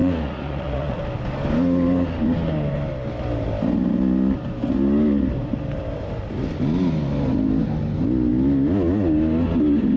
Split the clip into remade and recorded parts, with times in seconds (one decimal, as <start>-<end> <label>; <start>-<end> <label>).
0.0-1.0 remade; 1.0-10.0 recorded